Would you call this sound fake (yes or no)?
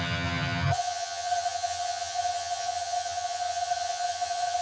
yes